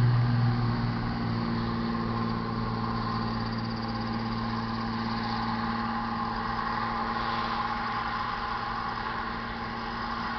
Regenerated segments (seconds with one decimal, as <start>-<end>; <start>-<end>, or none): 7.0-7.8